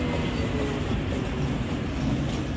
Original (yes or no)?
yes